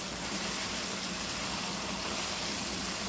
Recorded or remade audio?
recorded